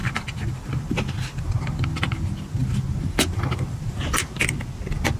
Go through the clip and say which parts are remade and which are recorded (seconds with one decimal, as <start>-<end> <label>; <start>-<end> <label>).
0.0-5.2 recorded